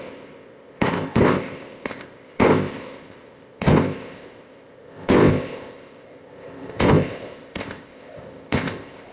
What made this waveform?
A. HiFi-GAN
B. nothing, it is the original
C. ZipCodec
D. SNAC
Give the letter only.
C